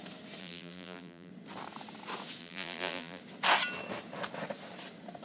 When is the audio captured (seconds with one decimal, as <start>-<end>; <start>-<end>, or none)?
0.0-0.4; 1.3-2.4; 3.2-5.2